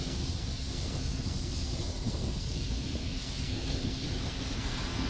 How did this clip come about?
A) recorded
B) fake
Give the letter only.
B